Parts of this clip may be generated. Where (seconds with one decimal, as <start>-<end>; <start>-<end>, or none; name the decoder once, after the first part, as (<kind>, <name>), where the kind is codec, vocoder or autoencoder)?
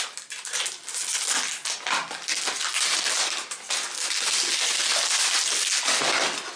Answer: 4.9-5.8 (vocoder, BigVGAN v2)